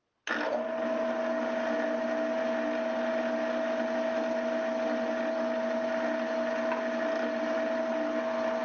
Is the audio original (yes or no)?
yes